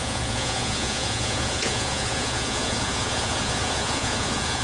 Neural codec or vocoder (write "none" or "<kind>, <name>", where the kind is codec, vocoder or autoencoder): vocoder, Vocos